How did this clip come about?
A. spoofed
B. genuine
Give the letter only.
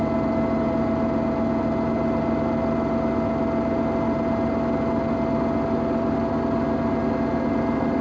B